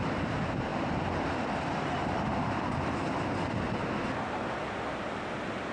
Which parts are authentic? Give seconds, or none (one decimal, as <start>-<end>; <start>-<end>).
0.0-5.7